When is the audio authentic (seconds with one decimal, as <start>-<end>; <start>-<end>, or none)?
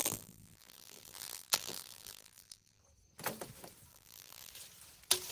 2.8-3.9; 4.5-5.3